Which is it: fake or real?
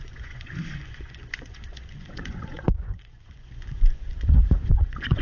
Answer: fake